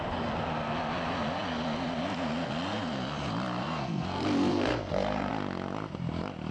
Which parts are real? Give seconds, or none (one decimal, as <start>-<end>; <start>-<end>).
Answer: 0.0-3.6; 5.3-6.5